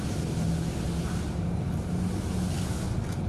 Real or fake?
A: real